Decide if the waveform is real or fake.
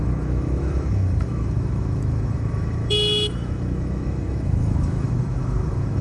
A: fake